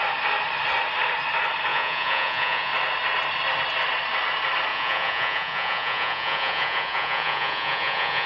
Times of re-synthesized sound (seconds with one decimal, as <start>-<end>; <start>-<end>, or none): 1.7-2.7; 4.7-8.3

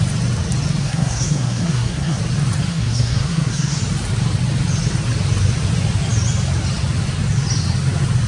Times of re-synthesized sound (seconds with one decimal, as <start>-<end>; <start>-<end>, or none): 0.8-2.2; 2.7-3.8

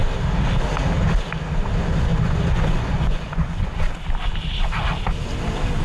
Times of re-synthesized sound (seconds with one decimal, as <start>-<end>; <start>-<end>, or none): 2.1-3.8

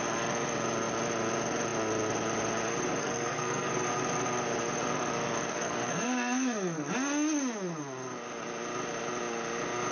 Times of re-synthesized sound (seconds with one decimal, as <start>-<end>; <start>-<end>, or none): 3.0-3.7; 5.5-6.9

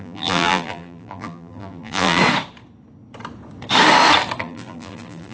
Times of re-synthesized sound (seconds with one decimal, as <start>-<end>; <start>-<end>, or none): 0.0-2.2; 4.4-5.3

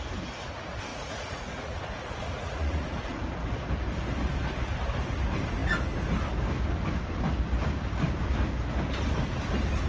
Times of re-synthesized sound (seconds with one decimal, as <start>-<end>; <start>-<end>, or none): 0.9-1.8; 2.2-3.2